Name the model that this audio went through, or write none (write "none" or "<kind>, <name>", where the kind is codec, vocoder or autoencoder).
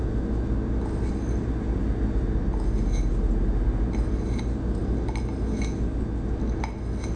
none